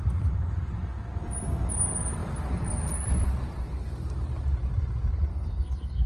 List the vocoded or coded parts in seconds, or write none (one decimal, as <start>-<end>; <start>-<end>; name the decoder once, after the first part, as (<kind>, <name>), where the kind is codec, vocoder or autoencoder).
5.3-6.1 (codec, SNAC)